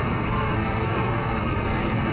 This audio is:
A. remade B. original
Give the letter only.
A